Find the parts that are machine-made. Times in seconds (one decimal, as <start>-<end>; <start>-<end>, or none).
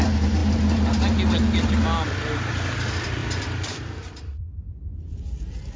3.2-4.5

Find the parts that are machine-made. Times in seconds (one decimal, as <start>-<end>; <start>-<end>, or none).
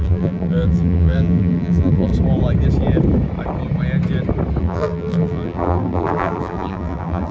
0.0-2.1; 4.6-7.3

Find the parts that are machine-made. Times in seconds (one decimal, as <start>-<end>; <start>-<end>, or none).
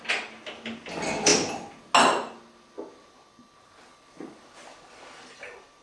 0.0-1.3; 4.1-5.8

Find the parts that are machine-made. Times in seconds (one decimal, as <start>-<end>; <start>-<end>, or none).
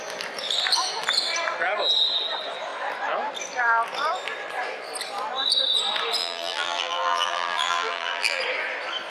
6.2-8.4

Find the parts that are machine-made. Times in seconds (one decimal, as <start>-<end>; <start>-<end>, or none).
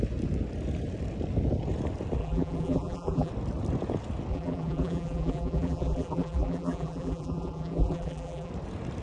2.2-3.3; 4.3-8.5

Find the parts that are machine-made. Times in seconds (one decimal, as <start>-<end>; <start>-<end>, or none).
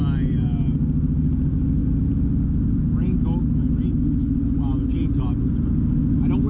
none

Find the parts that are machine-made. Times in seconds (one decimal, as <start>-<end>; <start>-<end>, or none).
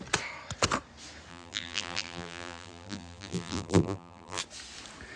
1.3-4.4